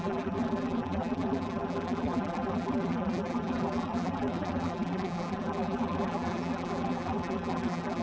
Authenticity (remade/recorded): remade